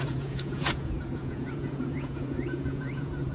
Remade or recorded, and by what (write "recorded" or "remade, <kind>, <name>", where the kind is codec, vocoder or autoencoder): remade, vocoder, Vocos